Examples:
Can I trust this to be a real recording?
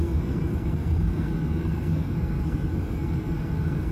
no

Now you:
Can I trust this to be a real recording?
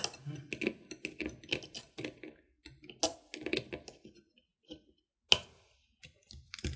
yes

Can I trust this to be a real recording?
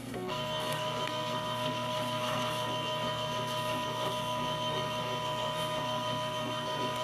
no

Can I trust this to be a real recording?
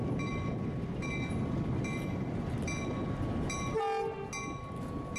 yes